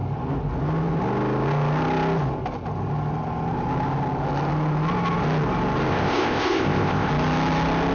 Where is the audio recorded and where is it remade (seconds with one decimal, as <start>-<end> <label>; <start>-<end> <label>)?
0.0-5.9 recorded; 5.9-7.1 remade; 7.1-7.9 recorded